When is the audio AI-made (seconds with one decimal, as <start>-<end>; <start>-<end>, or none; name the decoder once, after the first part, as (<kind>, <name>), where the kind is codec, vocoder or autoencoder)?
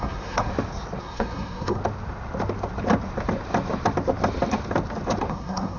0.0-0.5 (codec, SNAC); 1.0-1.8; 5.3-5.8